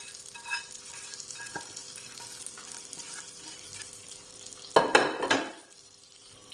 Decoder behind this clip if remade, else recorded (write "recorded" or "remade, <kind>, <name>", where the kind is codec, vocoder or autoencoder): remade, vocoder, BigVGAN v2